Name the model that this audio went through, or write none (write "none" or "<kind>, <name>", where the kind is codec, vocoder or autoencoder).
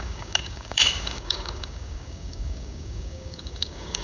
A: codec, DAC